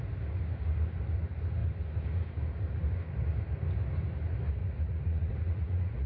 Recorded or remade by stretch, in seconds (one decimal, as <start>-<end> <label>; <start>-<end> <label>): 0.0-4.6 recorded; 4.6-6.1 remade